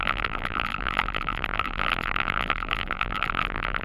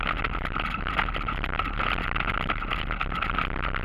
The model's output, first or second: first